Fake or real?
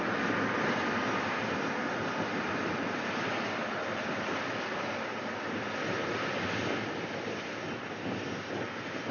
real